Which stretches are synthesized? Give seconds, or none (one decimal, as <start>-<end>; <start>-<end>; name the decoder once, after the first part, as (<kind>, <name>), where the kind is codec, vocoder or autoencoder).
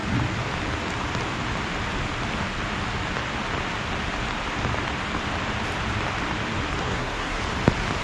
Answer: 6.8-7.4 (codec, SNAC)